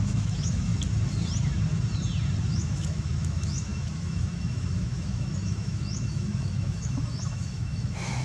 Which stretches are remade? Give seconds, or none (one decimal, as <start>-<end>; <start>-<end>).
0.0-0.7; 2.5-8.2